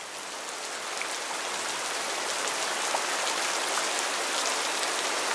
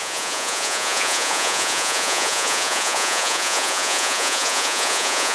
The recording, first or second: first